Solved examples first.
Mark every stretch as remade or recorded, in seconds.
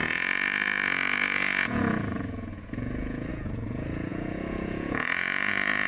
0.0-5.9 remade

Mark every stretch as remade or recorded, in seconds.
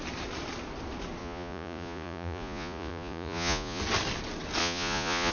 0.0-1.2 recorded; 1.2-3.8 remade; 3.8-4.6 recorded; 4.6-5.3 remade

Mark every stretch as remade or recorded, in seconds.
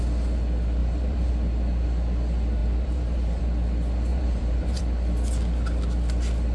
0.0-0.8 recorded; 0.8-1.3 remade; 1.3-2.6 recorded; 2.6-3.4 remade; 3.4-4.1 recorded; 4.1-4.8 remade; 4.8-6.5 recorded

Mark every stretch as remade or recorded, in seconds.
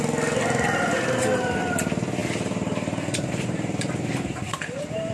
0.0-2.2 recorded; 2.2-5.1 remade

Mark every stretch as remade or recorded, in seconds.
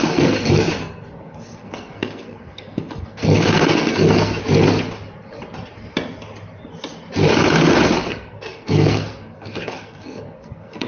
0.0-4.4 remade; 4.4-8.0 recorded; 8.0-10.9 remade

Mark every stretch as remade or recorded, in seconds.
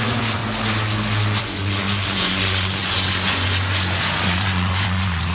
0.0-0.4 remade; 0.4-1.4 recorded; 1.4-5.3 remade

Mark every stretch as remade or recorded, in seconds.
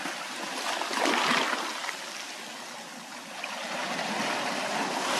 0.0-5.2 recorded